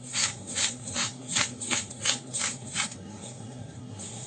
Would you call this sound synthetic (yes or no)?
yes